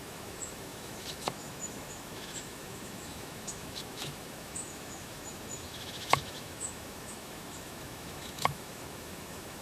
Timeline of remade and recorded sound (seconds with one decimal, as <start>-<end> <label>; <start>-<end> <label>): 0.0-9.6 remade